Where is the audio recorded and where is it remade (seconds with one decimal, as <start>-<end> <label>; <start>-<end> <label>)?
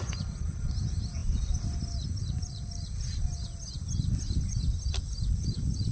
0.0-5.9 recorded